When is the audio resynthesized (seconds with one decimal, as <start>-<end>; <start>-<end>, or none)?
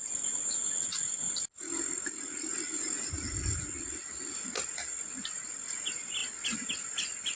none